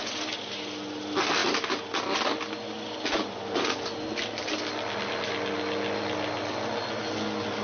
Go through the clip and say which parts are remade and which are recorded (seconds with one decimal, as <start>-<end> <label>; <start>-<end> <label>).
0.0-7.6 recorded